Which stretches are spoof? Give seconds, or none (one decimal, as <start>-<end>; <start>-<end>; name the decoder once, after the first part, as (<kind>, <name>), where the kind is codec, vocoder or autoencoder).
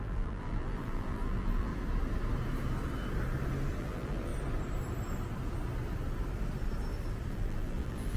0.0-1.7 (vocoder, BigVGAN v2); 3.8-4.3; 7.3-8.2